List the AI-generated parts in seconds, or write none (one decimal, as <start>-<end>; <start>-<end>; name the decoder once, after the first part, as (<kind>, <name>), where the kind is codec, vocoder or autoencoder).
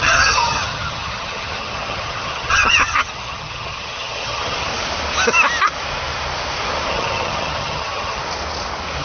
0.0-4.7 (vocoder, HiFi-GAN); 6.9-8.2